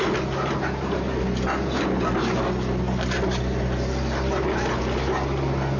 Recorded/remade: recorded